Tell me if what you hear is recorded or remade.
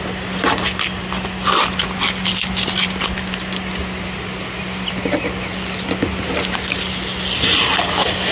recorded